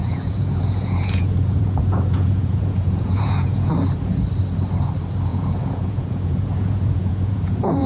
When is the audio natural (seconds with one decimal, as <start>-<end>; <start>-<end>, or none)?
3.7-5.3